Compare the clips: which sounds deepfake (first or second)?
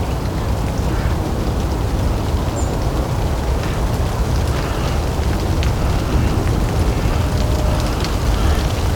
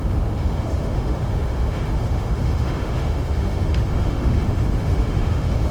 second